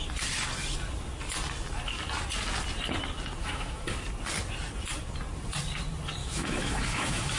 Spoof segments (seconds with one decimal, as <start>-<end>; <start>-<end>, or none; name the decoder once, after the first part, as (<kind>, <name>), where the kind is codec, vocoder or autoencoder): 3.4-4.0 (autoencoder, DAC-VAE); 6.2-7.4